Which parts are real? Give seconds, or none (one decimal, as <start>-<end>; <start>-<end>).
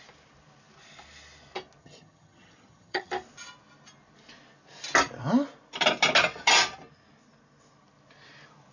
0.0-1.8; 3.1-8.7